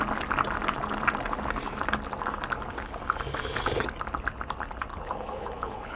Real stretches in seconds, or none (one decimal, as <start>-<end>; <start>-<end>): 0.0-4.9